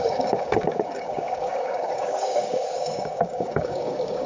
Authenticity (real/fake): fake